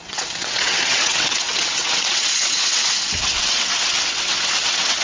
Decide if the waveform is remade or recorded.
remade